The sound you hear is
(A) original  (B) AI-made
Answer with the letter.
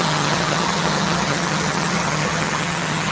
B